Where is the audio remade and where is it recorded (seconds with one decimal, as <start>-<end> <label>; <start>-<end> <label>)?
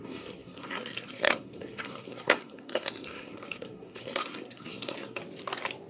0.0-5.2 remade; 5.2-5.9 recorded